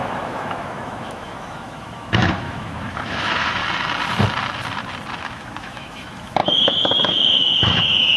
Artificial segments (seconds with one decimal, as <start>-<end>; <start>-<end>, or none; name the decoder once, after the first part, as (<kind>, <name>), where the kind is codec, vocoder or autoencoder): 0.0-3.6 (autoencoder, DAC-VAE); 5.2-8.2